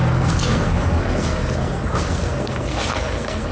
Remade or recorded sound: remade